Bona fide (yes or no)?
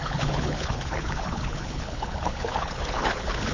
no